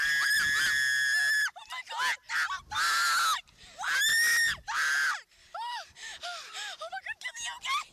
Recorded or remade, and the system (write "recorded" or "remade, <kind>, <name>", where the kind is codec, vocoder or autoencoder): recorded